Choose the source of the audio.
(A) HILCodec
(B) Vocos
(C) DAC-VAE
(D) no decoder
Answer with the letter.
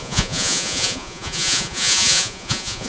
B